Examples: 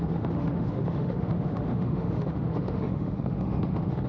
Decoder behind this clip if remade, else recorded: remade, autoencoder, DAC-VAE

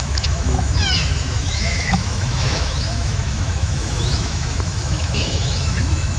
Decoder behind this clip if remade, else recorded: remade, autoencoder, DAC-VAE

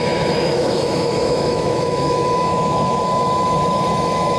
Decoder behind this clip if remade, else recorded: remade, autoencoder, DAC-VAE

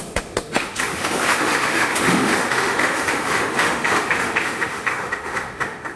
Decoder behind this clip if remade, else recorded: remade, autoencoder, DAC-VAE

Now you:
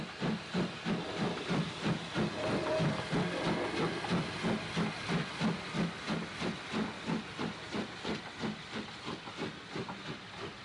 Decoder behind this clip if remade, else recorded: recorded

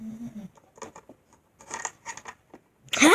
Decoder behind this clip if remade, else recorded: recorded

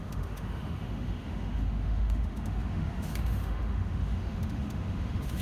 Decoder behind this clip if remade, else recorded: remade, autoencoder, DAC-VAE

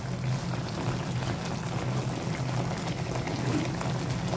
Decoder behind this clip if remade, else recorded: recorded